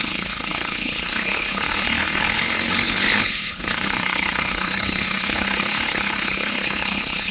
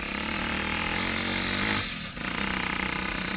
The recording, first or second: second